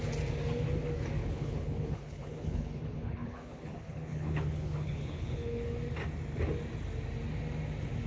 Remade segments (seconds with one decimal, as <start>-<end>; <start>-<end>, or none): 1.2-5.6